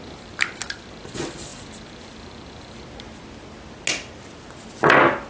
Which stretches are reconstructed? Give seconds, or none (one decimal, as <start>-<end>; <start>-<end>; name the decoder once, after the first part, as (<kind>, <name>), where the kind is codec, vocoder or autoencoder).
none